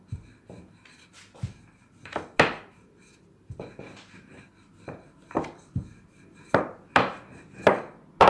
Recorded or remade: recorded